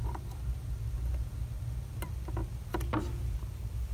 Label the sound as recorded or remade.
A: recorded